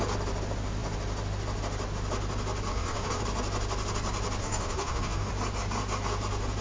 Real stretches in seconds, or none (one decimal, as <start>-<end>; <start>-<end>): 0.0-2.7; 3.2-4.4; 5.3-6.6